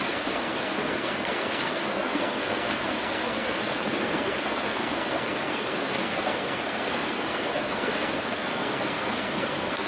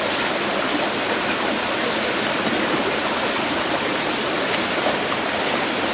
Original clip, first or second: second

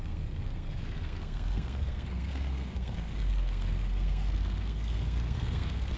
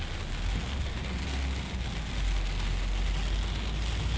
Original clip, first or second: second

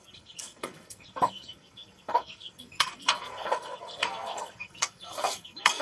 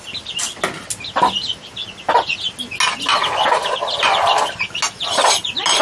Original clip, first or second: second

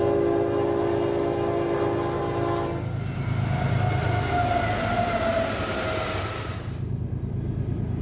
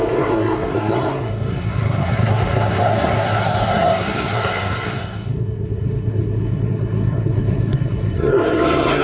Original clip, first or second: first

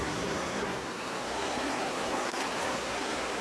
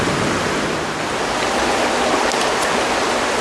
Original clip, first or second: second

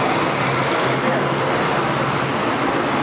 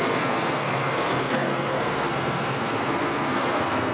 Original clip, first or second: first